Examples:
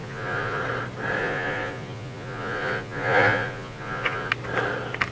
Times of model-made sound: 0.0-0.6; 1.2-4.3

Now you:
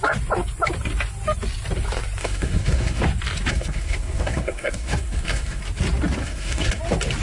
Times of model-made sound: 2.2-3.0; 3.5-5.6; 6.2-6.8